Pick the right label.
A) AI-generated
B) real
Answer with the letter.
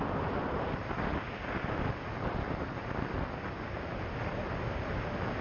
B